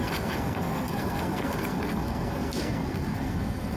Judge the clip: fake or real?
fake